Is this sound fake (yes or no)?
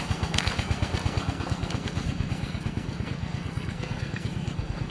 yes